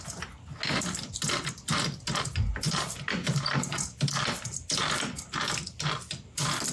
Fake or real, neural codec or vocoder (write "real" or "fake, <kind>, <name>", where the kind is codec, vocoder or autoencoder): real